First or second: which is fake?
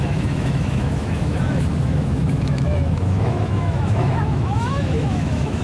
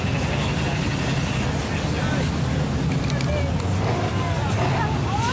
first